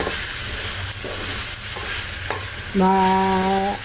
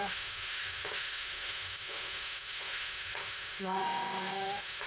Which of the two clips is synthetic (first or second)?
second